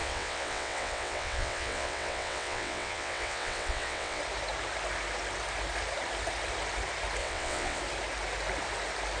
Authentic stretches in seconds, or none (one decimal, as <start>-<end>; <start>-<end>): 4.2-7.2; 7.8-9.2